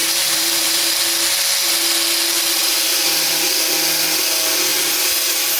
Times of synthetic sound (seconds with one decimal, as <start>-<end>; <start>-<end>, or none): 0.0-1.0; 2.6-3.3; 4.7-5.6